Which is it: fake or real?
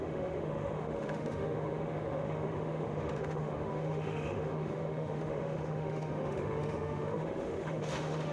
fake